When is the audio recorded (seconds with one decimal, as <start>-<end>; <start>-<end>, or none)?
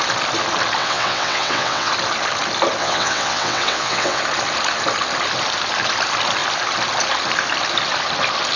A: 0.0-0.8; 1.9-2.8; 4.2-8.6